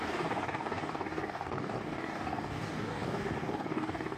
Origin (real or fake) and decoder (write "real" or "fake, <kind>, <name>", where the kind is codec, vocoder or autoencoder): fake, codec, DAC